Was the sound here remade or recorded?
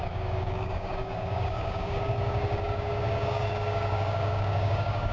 remade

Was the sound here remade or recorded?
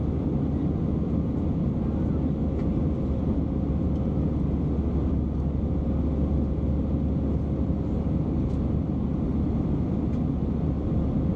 recorded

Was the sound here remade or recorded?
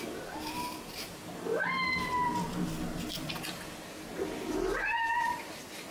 recorded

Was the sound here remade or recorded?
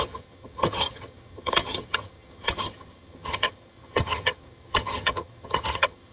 remade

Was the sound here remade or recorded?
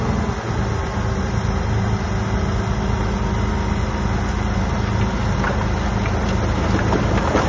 recorded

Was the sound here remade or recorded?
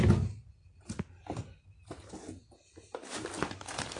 recorded